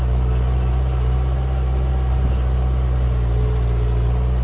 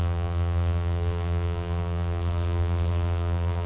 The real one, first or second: first